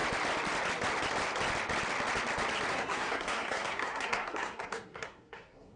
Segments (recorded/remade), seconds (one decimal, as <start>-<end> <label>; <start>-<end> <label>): 0.0-2.7 recorded; 2.7-5.8 remade